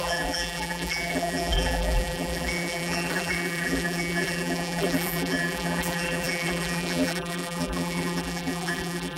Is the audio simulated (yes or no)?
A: yes